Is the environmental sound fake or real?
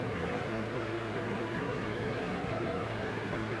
fake